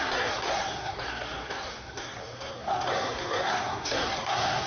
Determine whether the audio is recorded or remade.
remade